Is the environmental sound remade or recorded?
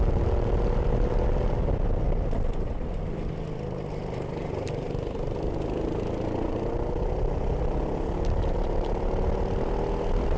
recorded